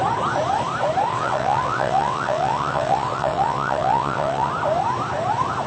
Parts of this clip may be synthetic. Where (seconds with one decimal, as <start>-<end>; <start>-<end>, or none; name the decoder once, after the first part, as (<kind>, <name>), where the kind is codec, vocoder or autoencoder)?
1.1-4.5 (vocoder, WaveNeXt)